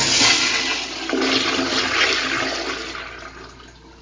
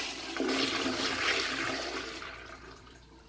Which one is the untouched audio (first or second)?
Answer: first